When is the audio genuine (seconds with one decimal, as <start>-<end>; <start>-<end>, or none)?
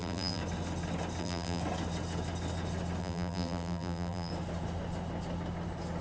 0.4-1.2; 1.6-3.0; 4.3-6.0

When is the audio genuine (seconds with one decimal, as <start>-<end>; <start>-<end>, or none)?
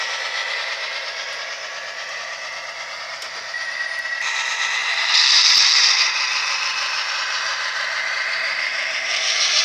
0.4-4.1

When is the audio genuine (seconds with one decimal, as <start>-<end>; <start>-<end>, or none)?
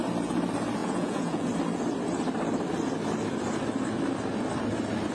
0.0-0.8; 1.5-5.1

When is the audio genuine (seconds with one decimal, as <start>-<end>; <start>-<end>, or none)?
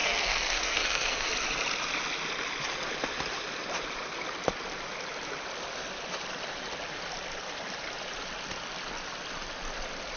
1.3-10.2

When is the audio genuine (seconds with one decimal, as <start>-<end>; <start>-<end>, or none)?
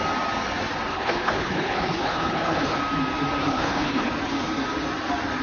0.0-0.9; 2.8-3.4; 4.1-5.4